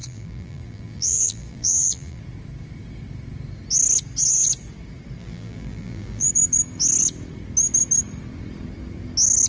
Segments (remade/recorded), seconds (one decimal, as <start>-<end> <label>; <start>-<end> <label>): 0.0-2.2 remade; 2.2-5.2 recorded; 5.2-6.3 remade; 6.3-9.5 recorded